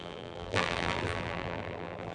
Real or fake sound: fake